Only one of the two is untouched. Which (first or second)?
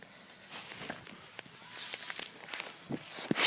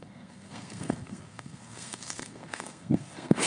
first